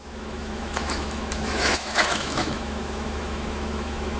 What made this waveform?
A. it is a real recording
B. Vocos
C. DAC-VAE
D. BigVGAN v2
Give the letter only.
C